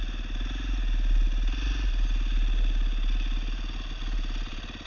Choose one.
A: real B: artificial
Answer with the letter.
A